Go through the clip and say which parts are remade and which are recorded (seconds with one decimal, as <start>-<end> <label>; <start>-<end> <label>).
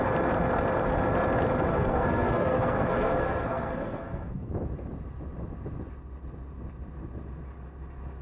0.0-1.7 recorded; 1.7-4.5 remade; 4.5-8.2 recorded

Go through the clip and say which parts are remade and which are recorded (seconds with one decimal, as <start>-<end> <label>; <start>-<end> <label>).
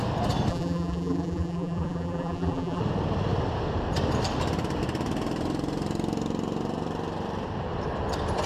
0.0-0.5 recorded; 0.5-2.8 remade; 2.8-8.5 recorded